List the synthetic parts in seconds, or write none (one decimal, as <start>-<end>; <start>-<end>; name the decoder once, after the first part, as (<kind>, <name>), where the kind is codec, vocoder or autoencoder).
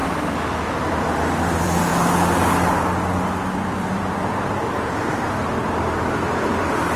0.8-1.9 (vocoder, BigVGAN v2); 3.7-4.3; 6.5-7.0